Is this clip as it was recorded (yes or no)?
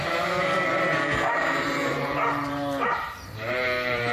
no